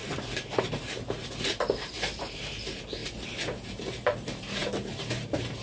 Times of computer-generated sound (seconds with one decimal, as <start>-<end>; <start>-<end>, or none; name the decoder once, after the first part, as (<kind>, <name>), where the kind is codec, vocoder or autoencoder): 0.6-5.6 (vocoder, BigVGAN v2)